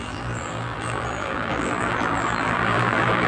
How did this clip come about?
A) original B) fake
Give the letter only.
B